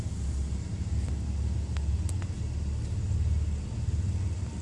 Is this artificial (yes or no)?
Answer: no